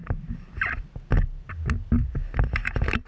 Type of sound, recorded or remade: recorded